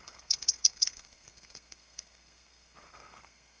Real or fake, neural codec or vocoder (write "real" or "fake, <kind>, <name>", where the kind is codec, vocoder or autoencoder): fake, codec, SNAC